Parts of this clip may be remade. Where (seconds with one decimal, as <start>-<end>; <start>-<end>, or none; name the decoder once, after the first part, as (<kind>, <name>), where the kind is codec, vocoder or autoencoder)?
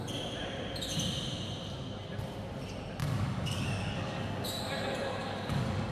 3.0-4.6 (codec, DAC); 5.2-5.9